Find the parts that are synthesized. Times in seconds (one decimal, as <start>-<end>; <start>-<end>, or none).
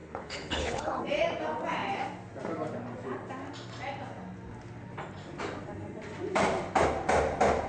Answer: 0.0-1.0